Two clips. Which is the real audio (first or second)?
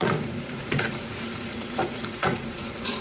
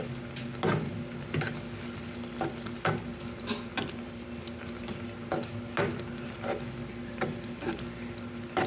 second